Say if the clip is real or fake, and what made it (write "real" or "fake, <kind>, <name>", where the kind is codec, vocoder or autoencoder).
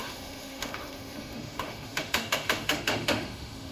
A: fake, autoencoder, DAC-VAE